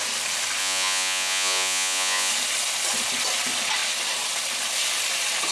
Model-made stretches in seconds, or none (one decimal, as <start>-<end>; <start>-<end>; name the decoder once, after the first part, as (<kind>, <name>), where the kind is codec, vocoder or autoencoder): 0.6-2.3 (vocoder, Vocos)